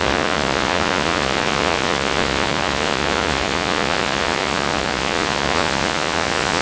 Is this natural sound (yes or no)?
no